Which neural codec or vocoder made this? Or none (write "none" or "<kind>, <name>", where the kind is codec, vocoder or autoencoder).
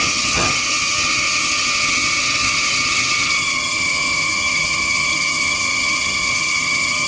vocoder, HiFi-GAN